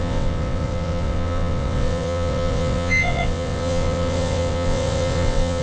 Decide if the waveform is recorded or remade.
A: remade